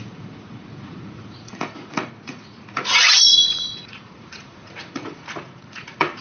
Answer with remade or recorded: remade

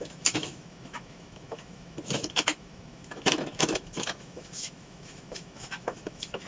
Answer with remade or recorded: remade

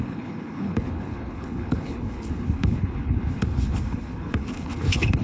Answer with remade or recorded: remade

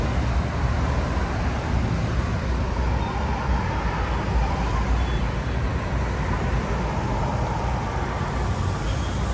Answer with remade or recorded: recorded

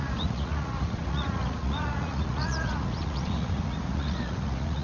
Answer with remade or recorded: remade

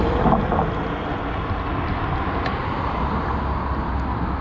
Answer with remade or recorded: recorded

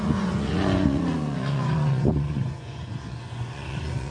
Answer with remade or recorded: remade